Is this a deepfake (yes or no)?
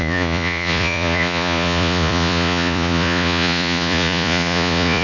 yes